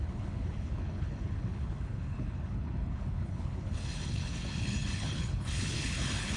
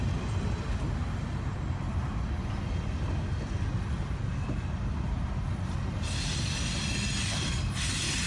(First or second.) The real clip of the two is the second